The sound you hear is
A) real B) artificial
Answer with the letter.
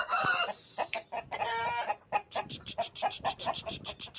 B